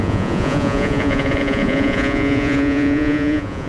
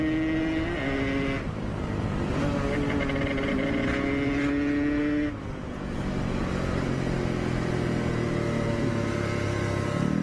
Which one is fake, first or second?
first